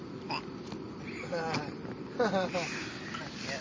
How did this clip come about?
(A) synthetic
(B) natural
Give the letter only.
B